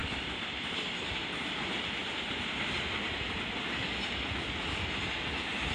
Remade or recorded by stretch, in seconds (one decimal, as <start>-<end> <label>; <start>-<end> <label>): 0.0-5.7 recorded